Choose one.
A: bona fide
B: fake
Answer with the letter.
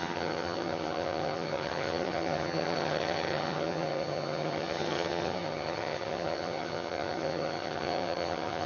B